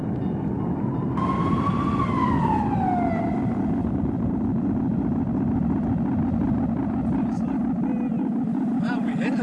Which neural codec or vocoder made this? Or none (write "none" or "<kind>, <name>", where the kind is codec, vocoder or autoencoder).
none